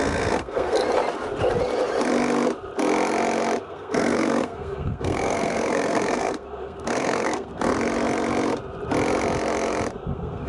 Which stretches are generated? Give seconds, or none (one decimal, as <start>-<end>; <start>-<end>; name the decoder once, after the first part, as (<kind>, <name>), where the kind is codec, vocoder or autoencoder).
0.0-0.8 (codec, SNAC); 3.6-7.7; 9.9-10.5